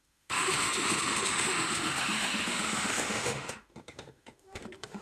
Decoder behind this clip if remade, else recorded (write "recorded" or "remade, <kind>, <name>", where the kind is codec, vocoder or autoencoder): remade, autoencoder, DAC-VAE